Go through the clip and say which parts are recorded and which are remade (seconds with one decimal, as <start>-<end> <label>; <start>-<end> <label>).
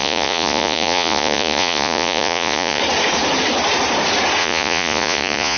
0.0-2.8 remade; 2.8-4.4 recorded; 4.4-5.6 remade